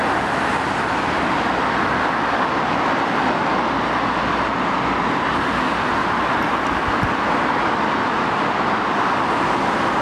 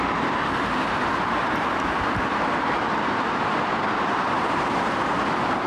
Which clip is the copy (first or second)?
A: second